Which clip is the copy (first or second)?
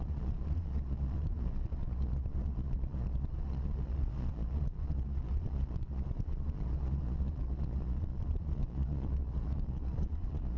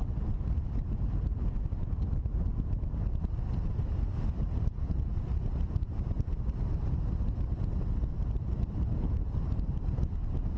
first